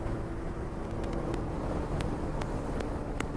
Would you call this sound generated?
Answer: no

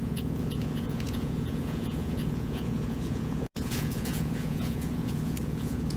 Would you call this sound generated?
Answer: yes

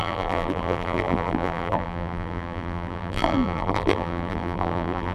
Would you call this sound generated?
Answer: yes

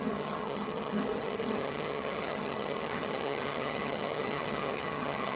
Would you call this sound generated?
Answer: yes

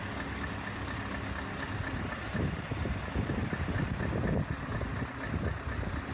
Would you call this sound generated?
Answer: no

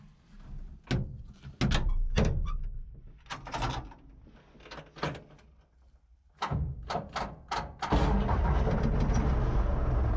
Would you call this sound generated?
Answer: no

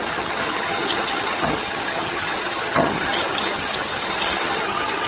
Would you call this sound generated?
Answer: yes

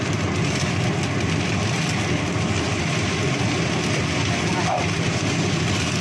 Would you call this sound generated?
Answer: no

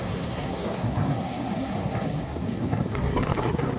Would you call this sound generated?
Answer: yes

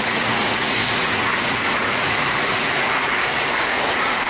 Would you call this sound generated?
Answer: yes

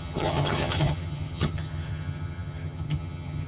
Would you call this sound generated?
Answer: yes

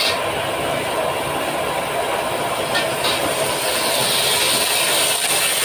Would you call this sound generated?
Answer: no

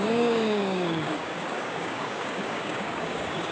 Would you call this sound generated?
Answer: yes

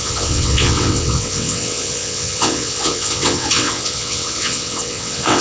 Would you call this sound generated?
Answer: yes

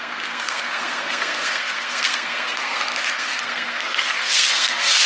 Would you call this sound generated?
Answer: yes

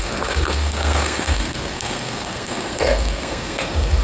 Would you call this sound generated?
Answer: yes